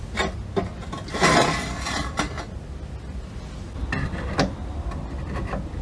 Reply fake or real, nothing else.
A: real